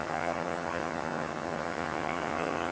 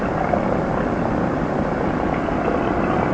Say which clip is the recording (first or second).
second